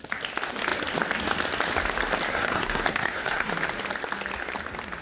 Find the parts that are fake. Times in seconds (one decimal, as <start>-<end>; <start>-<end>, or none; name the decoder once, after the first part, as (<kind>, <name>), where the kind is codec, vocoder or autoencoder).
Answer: 2.3-3.5 (codec, SNAC)